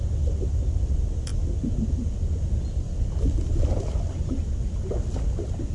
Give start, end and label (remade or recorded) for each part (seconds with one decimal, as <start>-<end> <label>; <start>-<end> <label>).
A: 0.0-5.7 recorded